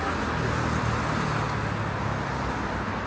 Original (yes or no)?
yes